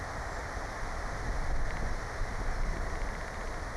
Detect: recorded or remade recorded